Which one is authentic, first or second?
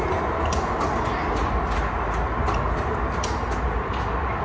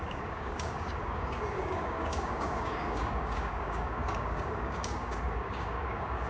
first